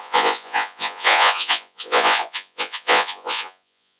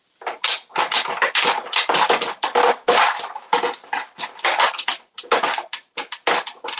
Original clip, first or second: second